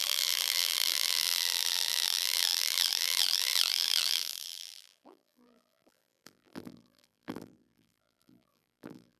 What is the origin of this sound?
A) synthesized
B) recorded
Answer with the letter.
A